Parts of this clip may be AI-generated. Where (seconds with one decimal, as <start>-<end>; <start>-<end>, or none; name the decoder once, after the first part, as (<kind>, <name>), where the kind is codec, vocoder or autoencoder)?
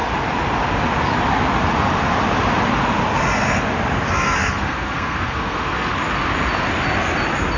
4.4-5.9 (codec, SNAC)